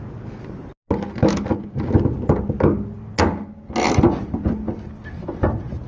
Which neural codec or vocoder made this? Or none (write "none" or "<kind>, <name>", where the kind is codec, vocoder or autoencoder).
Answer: none